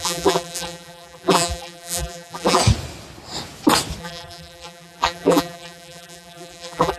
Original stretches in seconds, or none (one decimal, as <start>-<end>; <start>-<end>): 2.6-4.0